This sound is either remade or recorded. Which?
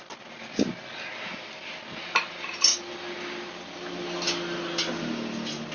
recorded